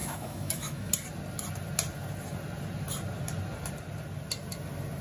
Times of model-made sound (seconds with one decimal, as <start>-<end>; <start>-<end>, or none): 0.0-0.9

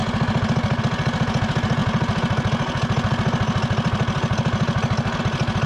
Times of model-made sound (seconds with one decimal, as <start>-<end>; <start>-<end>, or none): none

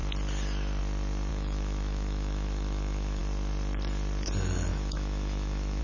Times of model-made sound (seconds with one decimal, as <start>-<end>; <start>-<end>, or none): 1.3-3.2; 4.7-5.8

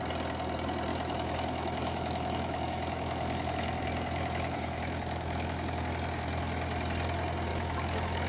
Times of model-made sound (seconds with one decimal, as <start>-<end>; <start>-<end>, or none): 0.9-5.8; 7.5-8.3

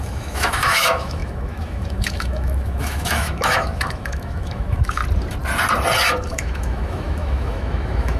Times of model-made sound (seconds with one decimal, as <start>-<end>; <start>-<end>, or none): 0.0-5.0; 6.1-8.2

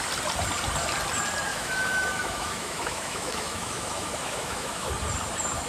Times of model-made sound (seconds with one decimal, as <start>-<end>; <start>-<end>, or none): 1.5-4.9

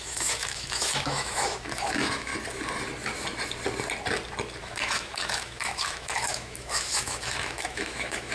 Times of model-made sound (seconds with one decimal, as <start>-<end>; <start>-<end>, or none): 0.0-2.3; 4.6-8.3

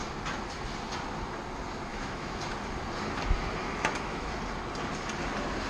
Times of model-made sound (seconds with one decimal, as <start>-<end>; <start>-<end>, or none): 1.9-2.4; 3.6-4.3